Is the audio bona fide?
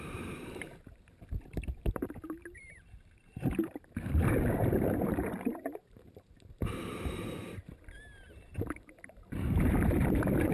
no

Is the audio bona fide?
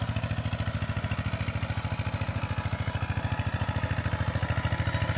yes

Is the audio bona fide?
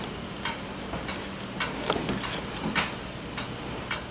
yes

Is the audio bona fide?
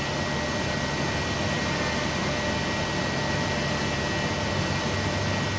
yes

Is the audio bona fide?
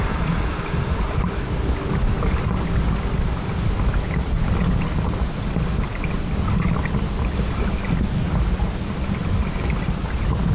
yes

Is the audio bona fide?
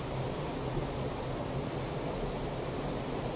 yes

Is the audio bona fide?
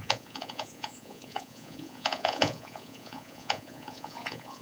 no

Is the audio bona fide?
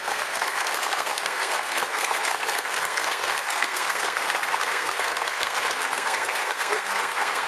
no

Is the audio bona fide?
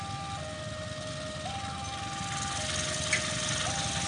yes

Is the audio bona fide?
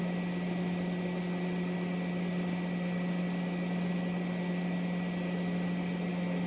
yes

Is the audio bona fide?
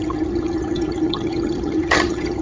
no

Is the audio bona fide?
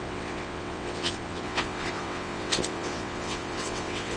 no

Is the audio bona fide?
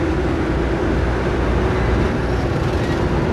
yes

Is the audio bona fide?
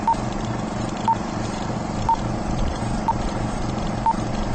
no